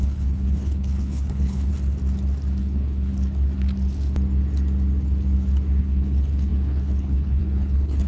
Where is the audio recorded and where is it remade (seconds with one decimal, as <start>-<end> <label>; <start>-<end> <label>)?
0.0-1.7 remade; 1.7-2.6 recorded; 2.6-3.1 remade; 3.1-5.8 recorded; 5.8-8.1 remade